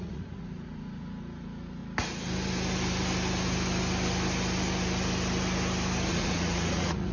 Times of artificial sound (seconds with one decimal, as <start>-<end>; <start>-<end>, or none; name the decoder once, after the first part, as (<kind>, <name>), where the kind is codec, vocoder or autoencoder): 0.0-1.8 (vocoder, Vocos); 6.1-7.1